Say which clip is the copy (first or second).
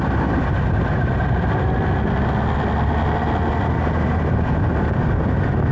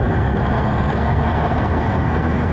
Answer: second